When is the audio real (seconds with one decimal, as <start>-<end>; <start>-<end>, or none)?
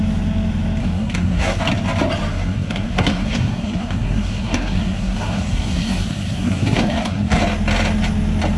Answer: 0.0-0.8; 1.6-2.3; 7.4-8.6